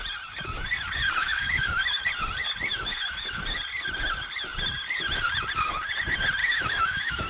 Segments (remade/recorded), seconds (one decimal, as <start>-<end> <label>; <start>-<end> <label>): 0.0-1.2 recorded; 1.2-2.0 remade; 2.0-2.7 recorded; 2.7-3.4 remade; 3.4-6.4 recorded; 6.4-7.3 remade